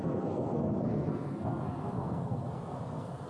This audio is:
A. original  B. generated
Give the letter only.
B